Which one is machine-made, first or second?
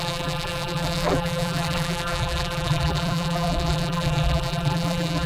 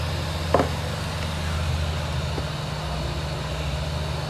first